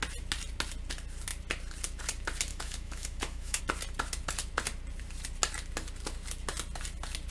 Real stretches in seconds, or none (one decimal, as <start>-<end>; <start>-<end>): 0.0-2.5; 3.6-7.3